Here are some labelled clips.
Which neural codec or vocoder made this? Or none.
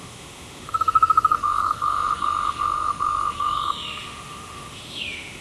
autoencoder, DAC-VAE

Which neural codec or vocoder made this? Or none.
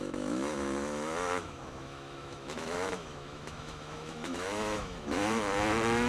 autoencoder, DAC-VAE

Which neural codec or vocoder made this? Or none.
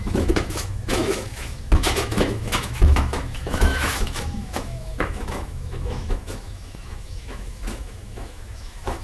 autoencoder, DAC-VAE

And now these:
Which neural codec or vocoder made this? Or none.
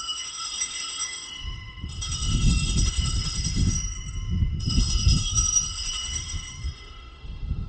autoencoder, DAC-VAE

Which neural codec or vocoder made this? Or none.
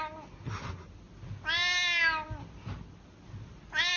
none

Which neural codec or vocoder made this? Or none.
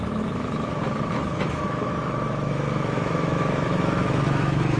autoencoder, DAC-VAE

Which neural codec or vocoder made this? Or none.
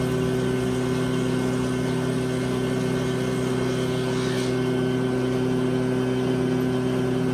none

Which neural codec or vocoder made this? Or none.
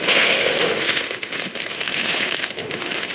autoencoder, DAC-VAE